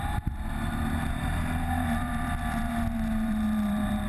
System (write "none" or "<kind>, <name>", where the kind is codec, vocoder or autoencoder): vocoder, BigVGAN v2